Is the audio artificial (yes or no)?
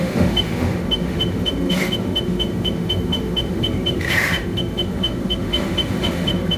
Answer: yes